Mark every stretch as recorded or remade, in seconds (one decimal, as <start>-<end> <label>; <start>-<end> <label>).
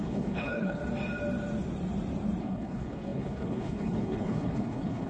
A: 0.0-0.8 remade; 0.8-2.4 recorded; 2.4-5.1 remade